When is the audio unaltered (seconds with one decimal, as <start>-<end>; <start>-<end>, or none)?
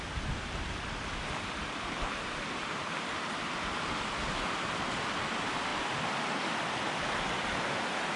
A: 0.0-8.2